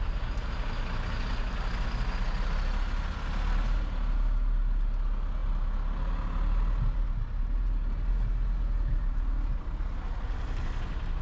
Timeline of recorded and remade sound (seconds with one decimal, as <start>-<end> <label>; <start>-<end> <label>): 0.0-11.2 recorded